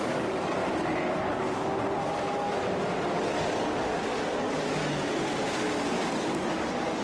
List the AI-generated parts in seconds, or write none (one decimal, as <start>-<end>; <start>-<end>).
0.0-0.6; 1.1-1.7; 3.1-4.8; 6.1-7.0